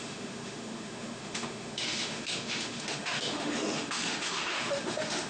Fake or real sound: fake